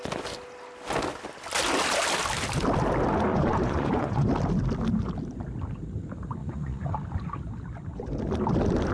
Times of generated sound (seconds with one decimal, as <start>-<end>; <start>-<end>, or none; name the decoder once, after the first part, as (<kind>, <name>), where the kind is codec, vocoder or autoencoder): 3.3-4.3 (vocoder, Vocos); 6.4-6.9